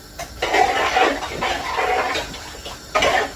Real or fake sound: real